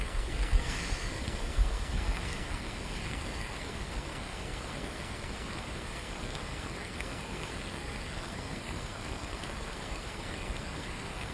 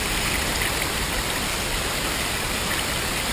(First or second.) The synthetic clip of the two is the first